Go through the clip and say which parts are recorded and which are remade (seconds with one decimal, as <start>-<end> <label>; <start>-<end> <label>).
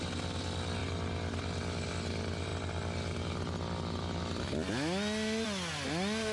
0.0-6.3 recorded